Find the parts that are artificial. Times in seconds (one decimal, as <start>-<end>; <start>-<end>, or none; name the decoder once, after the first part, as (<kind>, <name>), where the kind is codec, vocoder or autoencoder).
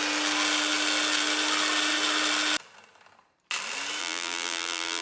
4.0-5.0 (vocoder, BigVGAN v2)